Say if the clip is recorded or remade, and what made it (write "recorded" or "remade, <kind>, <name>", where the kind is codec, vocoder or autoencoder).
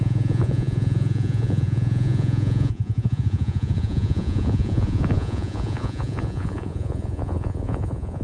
remade, vocoder, Vocos